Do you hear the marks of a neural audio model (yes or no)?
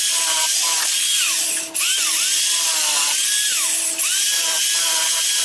no